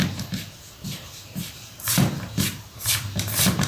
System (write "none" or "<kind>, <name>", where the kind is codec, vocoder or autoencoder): vocoder, BigVGAN v2